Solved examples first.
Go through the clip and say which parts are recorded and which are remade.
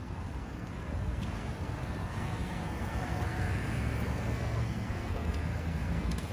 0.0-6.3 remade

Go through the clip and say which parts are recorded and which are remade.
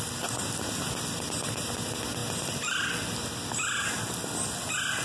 0.0-5.0 recorded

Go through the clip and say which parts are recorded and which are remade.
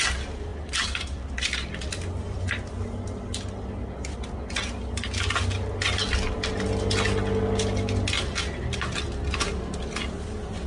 0.0-10.7 recorded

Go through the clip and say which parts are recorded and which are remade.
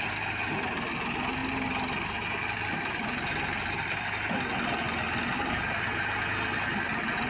0.0-7.3 recorded